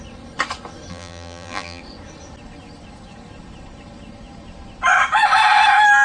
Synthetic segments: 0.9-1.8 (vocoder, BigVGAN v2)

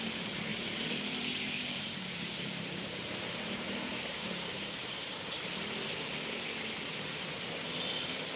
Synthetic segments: 0.5-5.5 (vocoder, BigVGAN v2)

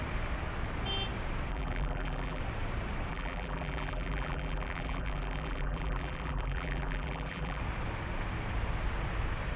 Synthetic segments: 1.5-2.4 (vocoder, BigVGAN v2); 3.1-7.6

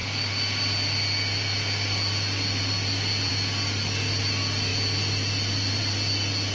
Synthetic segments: none